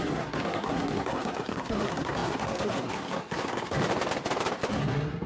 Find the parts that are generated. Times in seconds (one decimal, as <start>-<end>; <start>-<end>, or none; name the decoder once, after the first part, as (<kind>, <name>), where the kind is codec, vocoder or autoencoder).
0.0-3.8 (codec, SNAC); 4.7-5.3